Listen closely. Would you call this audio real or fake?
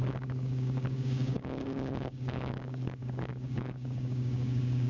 fake